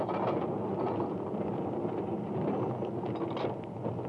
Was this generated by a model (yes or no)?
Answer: no